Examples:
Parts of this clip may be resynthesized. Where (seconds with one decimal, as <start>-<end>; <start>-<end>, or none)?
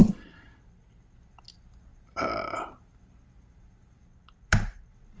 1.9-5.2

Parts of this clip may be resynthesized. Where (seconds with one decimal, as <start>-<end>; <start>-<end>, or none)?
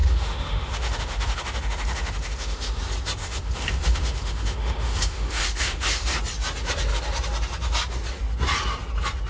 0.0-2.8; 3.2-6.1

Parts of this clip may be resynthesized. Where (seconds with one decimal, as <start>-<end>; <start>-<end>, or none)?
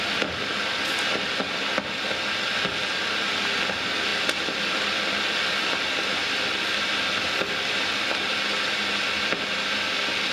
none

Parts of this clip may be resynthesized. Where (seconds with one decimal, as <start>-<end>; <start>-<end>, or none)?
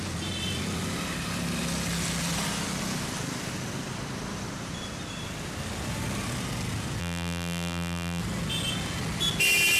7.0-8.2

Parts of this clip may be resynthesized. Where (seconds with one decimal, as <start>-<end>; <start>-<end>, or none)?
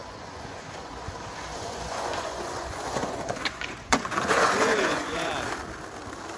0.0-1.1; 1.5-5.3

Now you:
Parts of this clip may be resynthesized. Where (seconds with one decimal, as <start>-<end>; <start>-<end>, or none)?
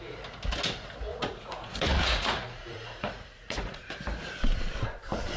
1.1-4.0